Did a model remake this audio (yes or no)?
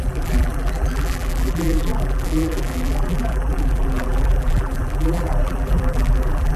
yes